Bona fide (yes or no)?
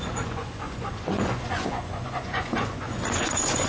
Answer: no